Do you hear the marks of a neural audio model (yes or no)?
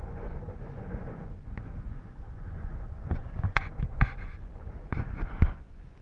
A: yes